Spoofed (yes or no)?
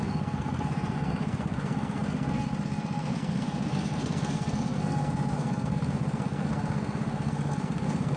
yes